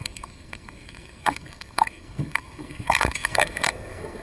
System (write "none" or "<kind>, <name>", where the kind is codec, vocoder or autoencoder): codec, SNAC